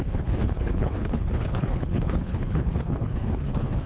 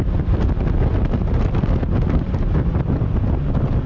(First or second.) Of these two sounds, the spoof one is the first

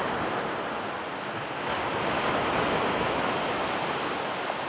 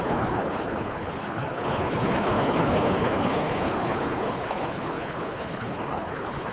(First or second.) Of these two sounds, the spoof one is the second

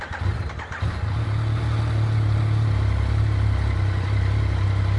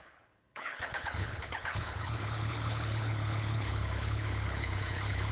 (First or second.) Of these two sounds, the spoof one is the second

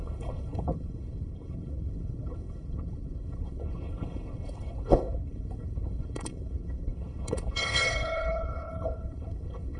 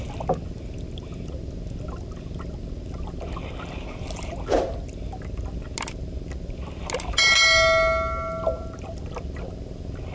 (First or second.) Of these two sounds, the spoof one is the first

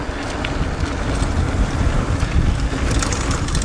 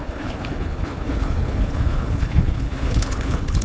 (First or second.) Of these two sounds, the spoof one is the second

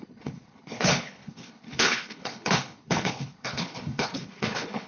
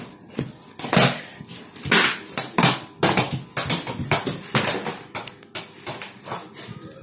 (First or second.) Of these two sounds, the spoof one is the first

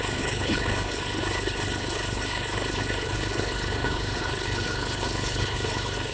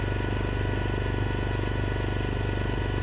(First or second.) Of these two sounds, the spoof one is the first